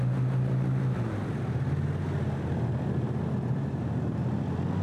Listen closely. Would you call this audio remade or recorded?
recorded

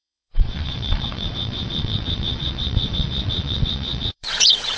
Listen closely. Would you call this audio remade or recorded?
remade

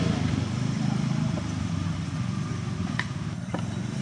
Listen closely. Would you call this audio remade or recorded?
remade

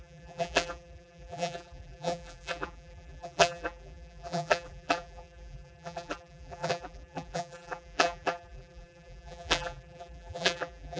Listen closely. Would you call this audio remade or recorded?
remade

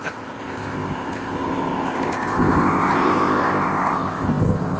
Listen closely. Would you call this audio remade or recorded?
remade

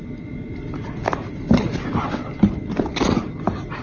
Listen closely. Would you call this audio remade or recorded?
recorded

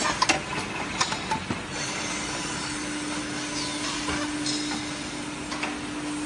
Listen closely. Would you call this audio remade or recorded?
recorded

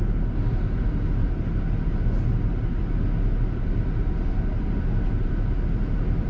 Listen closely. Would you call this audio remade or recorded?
recorded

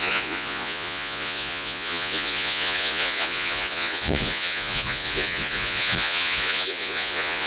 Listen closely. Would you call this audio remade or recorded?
remade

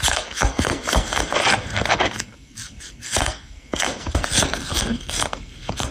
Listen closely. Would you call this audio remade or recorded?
remade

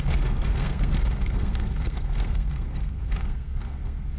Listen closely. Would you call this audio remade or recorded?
remade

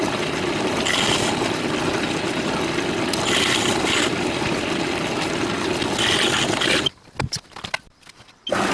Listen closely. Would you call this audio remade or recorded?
recorded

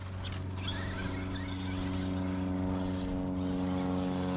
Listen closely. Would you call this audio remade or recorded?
recorded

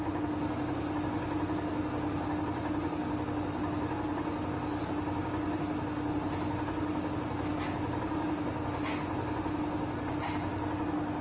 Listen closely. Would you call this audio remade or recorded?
recorded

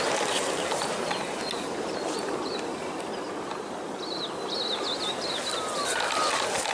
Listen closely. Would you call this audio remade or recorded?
recorded